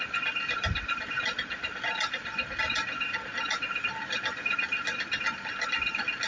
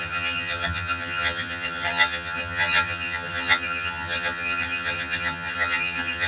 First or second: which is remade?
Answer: second